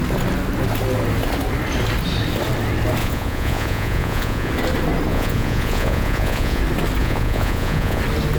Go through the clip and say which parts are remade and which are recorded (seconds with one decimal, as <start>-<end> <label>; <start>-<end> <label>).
0.0-3.0 recorded; 3.0-4.5 remade; 4.5-5.1 recorded; 5.1-6.6 remade; 6.6-7.0 recorded; 7.0-8.0 remade; 8.0-8.4 recorded